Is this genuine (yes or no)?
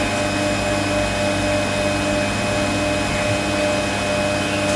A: yes